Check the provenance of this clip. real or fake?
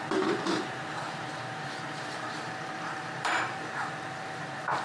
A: fake